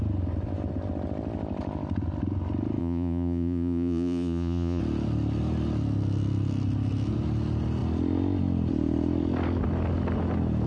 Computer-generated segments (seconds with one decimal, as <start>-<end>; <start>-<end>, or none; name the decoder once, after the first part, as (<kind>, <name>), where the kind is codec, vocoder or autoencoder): 2.8-4.8 (vocoder, Vocos)